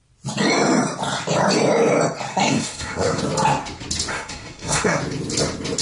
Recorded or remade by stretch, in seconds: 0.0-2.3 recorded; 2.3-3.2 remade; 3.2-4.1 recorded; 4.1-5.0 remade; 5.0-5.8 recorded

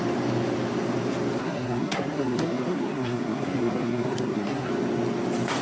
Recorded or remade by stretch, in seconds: 0.0-1.4 recorded; 1.4-4.7 remade; 4.7-5.6 recorded

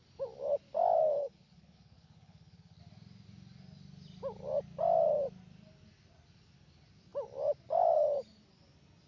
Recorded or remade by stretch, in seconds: 0.0-1.2 recorded; 1.2-2.8 remade; 2.8-9.1 recorded

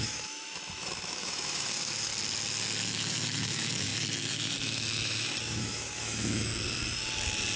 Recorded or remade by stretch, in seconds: 0.0-2.1 remade; 2.1-2.8 recorded; 2.8-6.5 remade; 6.5-7.6 recorded

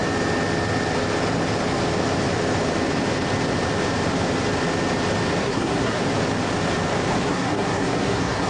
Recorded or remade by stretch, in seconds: 0.0-5.4 recorded; 5.4-6.0 remade; 6.0-7.2 recorded; 7.2-8.5 remade

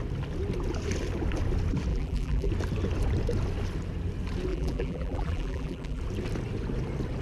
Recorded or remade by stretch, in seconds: 0.0-1.9 recorded; 1.9-2.5 remade; 2.5-4.5 recorded; 4.5-6.0 remade; 6.0-7.2 recorded